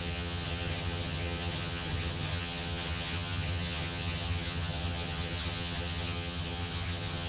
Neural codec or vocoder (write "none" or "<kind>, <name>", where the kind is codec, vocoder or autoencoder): vocoder, HiFi-GAN